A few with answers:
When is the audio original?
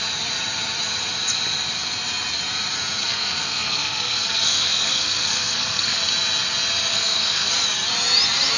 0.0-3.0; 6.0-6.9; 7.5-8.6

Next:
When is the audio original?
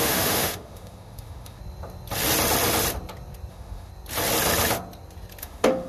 1.6-3.5; 3.9-5.4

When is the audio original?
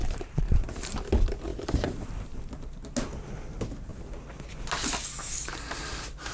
0.6-1.5; 2.5-6.3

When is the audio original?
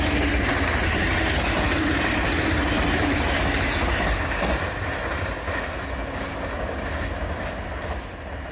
0.0-8.5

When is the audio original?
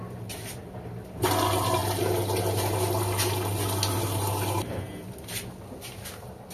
0.0-6.5